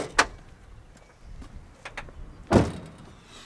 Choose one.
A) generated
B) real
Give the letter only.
B